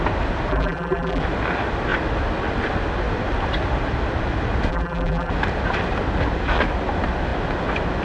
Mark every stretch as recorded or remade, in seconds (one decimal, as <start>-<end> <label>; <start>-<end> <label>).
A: 0.0-0.5 recorded; 0.5-1.2 remade; 1.2-4.7 recorded; 4.7-5.3 remade; 5.3-8.0 recorded